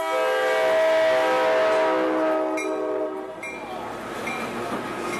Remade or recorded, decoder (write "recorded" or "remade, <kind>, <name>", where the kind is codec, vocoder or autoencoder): recorded